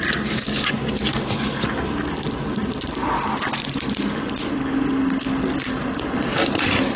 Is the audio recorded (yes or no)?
yes